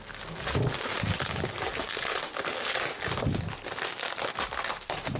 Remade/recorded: recorded